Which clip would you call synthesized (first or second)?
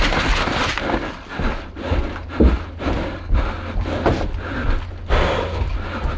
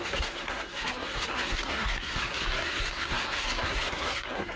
second